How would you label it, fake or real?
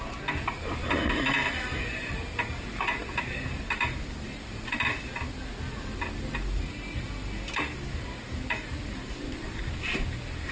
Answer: real